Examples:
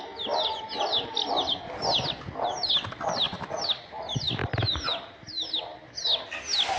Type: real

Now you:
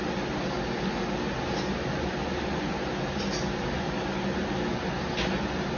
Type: real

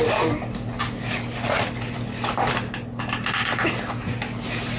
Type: real